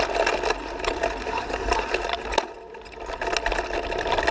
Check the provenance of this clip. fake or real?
real